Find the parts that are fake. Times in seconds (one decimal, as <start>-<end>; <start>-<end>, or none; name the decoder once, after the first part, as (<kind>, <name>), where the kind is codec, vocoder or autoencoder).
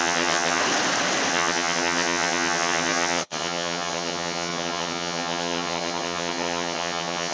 0.0-0.6 (vocoder, HiFi-GAN); 1.3-7.3